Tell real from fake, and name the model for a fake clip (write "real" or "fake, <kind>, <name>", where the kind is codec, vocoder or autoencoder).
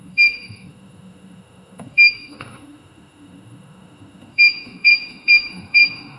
fake, autoencoder, DAC-VAE